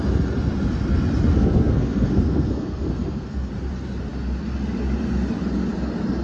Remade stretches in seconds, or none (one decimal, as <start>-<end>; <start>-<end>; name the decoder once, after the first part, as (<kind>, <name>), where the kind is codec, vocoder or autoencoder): 1.3-3.5 (codec, SNAC)